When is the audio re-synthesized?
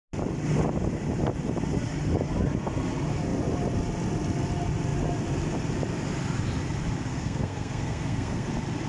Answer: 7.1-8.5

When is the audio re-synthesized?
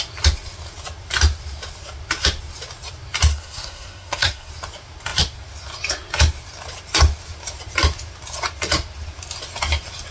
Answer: 3.3-4.5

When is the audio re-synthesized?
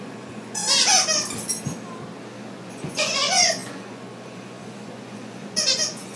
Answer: 0.0-0.6; 2.5-6.2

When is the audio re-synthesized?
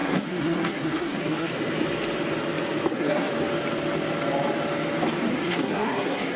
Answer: 0.0-1.5; 2.9-3.3; 5.3-6.4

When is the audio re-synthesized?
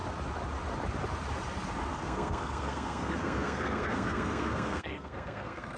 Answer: 1.9-5.8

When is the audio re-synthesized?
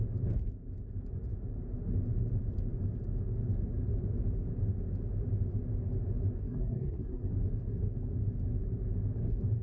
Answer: 6.4-7.3